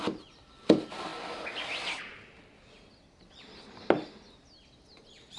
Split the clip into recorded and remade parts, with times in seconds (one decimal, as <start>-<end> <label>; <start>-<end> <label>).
0.0-5.4 recorded